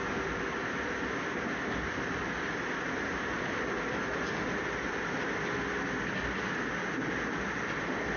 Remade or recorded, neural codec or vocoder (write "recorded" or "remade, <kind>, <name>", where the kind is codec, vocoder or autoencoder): recorded